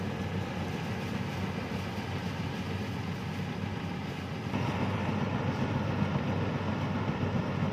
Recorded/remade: recorded